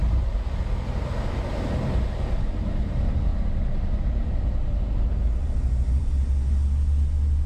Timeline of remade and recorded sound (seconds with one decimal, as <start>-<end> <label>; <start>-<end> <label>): 0.0-0.7 remade; 0.7-7.5 recorded